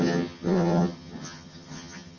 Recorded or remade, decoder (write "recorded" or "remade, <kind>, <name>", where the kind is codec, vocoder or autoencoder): remade, vocoder, HiFi-GAN